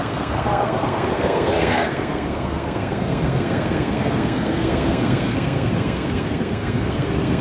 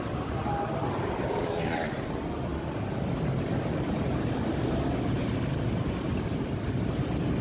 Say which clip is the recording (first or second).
second